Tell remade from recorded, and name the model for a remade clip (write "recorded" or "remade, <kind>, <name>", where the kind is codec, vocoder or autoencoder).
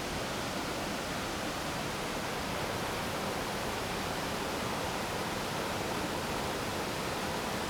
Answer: recorded